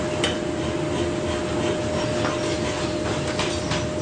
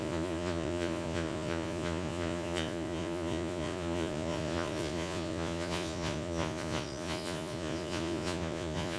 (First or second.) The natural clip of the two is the first